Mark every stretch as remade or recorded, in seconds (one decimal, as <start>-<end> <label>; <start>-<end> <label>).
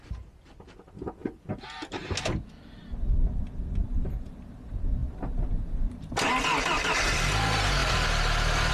0.0-7.8 recorded; 7.8-8.7 remade